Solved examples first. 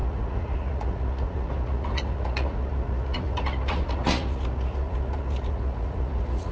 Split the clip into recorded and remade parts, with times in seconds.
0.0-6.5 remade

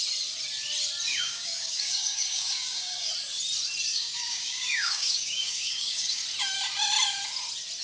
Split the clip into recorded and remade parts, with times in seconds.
0.0-1.1 recorded; 1.1-3.1 remade; 3.1-3.9 recorded; 3.9-6.2 remade; 6.2-7.8 recorded

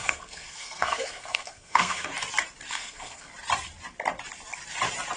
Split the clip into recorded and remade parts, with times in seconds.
0.0-2.1 remade; 2.1-2.7 recorded; 2.7-3.3 remade; 3.3-5.2 recorded

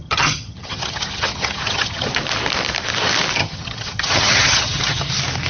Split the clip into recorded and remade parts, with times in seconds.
0.0-2.1 remade; 2.1-3.4 recorded; 3.4-5.1 remade; 5.1-5.5 recorded